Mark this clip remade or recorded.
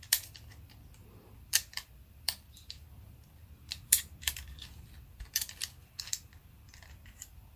remade